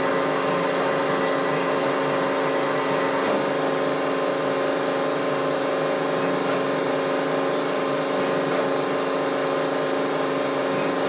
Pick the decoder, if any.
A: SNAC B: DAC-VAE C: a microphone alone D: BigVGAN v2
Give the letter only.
C